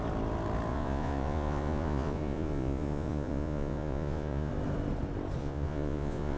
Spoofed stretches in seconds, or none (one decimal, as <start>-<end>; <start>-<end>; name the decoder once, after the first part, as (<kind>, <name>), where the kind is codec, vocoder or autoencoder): 0.7-4.5 (vocoder, Vocos); 5.4-6.4